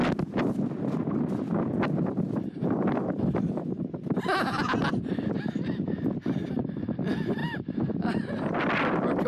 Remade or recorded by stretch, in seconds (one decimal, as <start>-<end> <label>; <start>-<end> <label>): 0.0-7.4 recorded; 7.4-8.5 remade; 8.5-9.3 recorded